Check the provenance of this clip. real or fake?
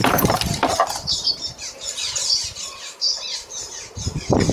fake